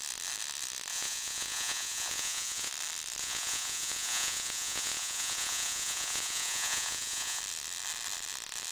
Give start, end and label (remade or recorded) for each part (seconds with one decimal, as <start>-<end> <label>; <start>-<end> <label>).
0.0-0.9 recorded; 0.9-2.7 remade; 2.7-3.2 recorded; 3.2-7.4 remade; 7.4-8.7 recorded